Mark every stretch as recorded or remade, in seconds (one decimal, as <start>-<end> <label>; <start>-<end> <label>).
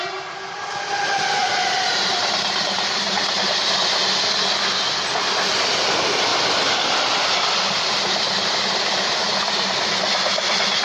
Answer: 0.0-1.4 recorded; 1.4-3.4 remade; 3.4-10.8 recorded